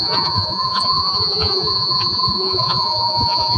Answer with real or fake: fake